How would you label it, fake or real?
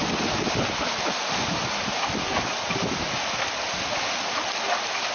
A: real